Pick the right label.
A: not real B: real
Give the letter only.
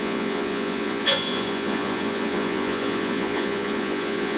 A